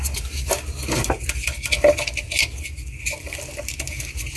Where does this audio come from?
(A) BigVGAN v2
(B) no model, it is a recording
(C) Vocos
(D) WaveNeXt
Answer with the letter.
B